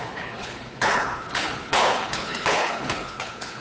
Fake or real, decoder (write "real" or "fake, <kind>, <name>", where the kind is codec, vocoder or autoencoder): fake, codec, HILCodec